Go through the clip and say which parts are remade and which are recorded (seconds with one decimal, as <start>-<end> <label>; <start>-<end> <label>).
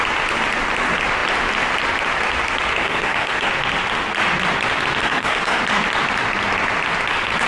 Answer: 0.0-2.7 recorded; 2.7-3.5 remade; 3.5-5.0 recorded; 5.0-5.6 remade; 5.6-7.5 recorded